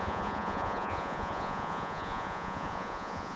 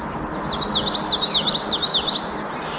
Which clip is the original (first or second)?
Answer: second